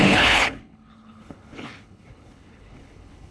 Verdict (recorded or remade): remade